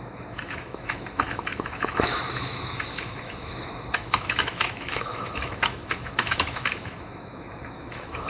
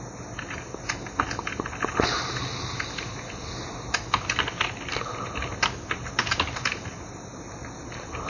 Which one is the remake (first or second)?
first